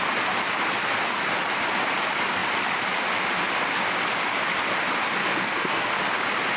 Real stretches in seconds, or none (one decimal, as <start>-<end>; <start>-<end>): 0.0-5.2; 5.9-6.6